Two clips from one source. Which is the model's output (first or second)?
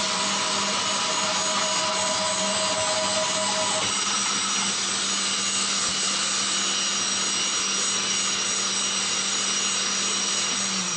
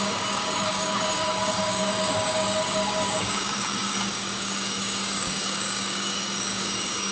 second